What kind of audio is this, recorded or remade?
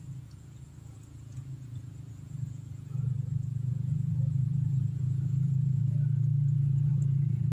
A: remade